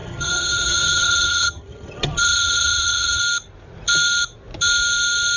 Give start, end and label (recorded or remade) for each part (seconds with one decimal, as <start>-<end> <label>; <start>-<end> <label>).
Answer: 0.0-3.2 remade; 3.2-5.4 recorded